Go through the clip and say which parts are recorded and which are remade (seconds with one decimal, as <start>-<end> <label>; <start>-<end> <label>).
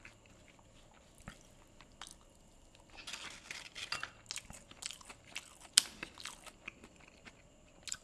0.0-8.0 recorded